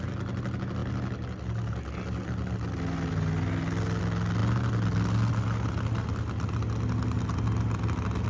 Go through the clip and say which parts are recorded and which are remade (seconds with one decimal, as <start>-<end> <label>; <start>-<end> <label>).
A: 0.0-8.3 recorded